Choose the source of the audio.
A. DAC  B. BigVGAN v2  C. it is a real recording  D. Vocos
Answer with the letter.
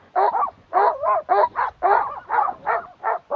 D